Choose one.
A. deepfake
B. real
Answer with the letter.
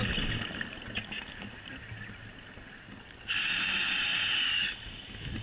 B